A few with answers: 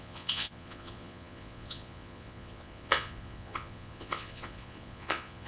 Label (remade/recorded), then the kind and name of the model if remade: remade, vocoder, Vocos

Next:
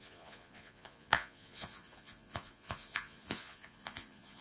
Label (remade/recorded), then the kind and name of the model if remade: remade, vocoder, Vocos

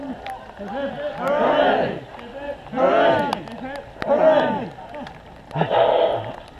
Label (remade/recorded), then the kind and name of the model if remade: recorded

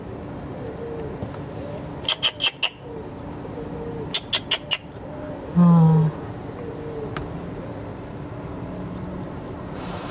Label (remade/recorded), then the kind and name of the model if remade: recorded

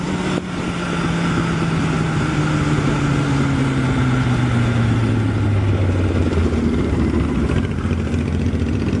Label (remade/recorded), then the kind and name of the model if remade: recorded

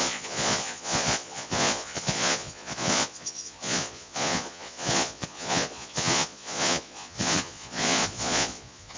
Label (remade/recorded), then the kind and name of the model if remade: remade, vocoder, Vocos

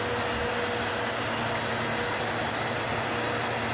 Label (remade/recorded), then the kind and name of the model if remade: recorded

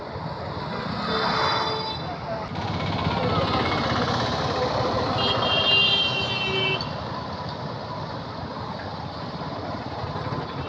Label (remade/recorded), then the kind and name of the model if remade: recorded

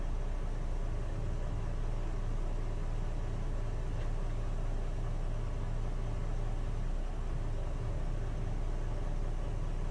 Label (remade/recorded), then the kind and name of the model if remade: recorded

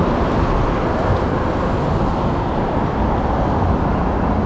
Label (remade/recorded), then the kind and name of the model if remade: recorded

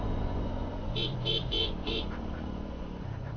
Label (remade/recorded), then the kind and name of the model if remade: remade, vocoder, Vocos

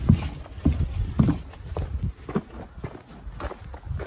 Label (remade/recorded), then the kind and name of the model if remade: recorded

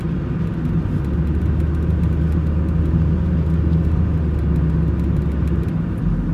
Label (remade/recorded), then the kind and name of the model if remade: recorded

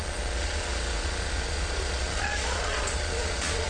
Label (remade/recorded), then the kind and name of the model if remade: remade, vocoder, Vocos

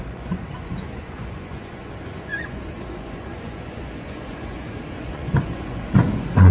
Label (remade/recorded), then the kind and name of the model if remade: remade, vocoder, Vocos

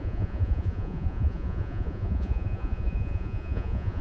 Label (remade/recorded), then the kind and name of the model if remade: remade, vocoder, Vocos